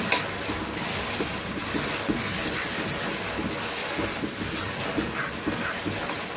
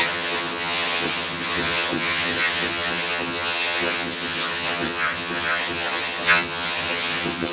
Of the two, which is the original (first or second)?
first